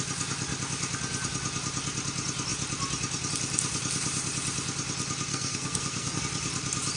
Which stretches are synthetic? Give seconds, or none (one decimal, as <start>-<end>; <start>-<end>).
5.3-6.2